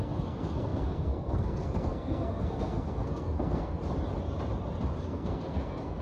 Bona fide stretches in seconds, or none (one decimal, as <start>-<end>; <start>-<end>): 3.8-5.0